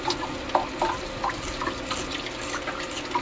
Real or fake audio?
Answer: real